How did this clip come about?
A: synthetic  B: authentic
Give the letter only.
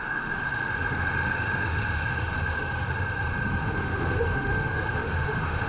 A